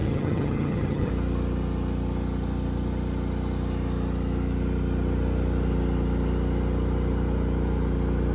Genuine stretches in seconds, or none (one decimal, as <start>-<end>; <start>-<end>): 1.1-8.3